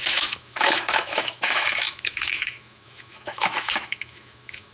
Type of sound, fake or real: fake